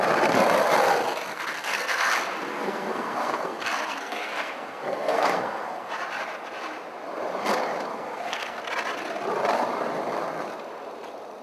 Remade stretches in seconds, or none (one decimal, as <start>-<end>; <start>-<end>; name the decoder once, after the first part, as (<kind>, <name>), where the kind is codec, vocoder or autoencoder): 1.3-2.1 (codec, SNAC); 2.5-5.9; 7.9-8.6